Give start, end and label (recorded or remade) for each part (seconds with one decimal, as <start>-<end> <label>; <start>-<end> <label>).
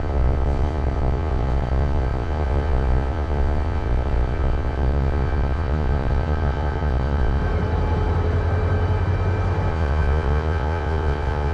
0.0-7.4 remade; 7.4-9.7 recorded; 9.7-11.5 remade